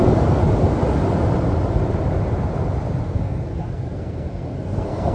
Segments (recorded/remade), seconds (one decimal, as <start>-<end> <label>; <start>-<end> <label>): 0.0-0.4 remade; 0.4-3.0 recorded; 3.0-5.1 remade